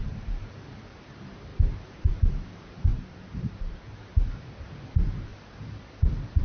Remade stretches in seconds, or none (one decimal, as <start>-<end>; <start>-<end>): 0.0-6.4